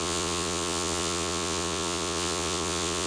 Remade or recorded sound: remade